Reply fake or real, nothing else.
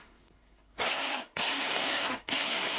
fake